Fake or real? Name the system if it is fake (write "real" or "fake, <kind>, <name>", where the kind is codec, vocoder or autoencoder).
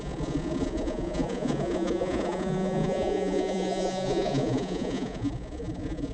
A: fake, vocoder, Vocos